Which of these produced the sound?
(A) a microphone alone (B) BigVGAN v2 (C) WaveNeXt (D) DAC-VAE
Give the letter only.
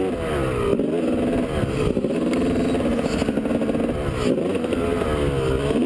A